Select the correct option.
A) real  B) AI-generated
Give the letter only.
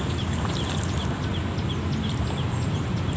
A